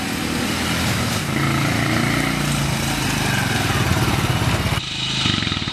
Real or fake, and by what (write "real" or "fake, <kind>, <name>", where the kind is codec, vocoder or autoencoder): real